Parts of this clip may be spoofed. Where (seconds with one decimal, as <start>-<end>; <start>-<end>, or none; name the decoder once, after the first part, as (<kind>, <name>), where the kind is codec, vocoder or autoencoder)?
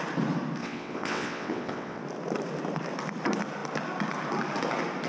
0.6-2.0 (vocoder, WaveNeXt)